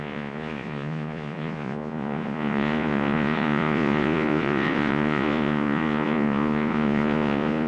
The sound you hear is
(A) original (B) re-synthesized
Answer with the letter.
B